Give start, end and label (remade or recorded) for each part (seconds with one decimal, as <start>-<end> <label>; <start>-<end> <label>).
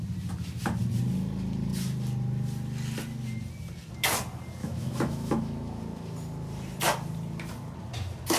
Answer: 0.0-4.6 recorded; 4.6-5.8 remade; 5.8-8.4 recorded